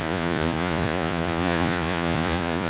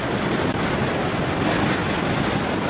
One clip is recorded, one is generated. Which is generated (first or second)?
first